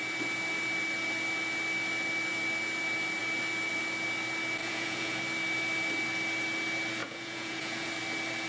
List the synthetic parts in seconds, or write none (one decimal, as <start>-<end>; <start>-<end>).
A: 4.6-5.2; 7.0-7.9